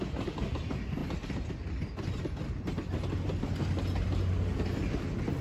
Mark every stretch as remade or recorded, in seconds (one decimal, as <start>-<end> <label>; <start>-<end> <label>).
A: 0.0-5.4 recorded